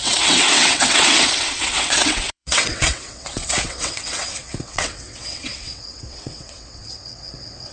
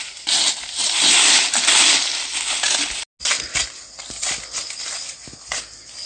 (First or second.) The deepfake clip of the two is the first